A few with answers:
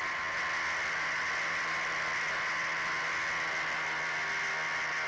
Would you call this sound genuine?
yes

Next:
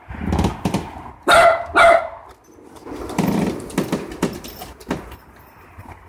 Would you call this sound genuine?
yes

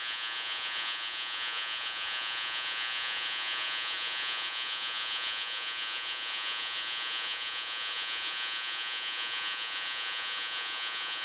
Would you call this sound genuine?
no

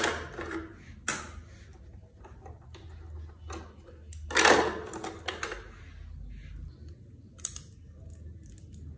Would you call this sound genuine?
yes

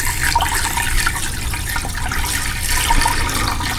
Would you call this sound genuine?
yes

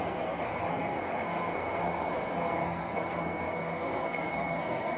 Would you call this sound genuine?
no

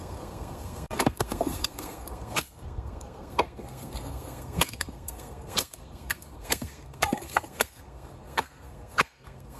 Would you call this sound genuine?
no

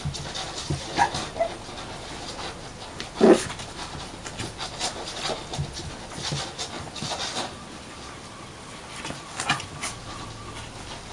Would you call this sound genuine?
yes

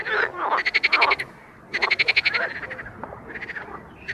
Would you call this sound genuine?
yes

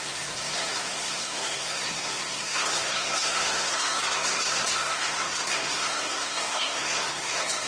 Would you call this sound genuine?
no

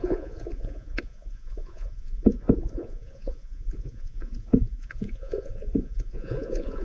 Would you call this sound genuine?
no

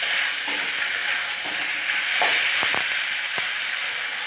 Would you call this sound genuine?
yes